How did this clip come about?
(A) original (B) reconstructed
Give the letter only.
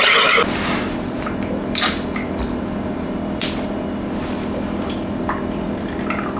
A